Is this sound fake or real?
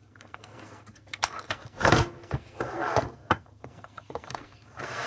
fake